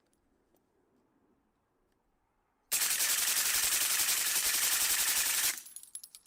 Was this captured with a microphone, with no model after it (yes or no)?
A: no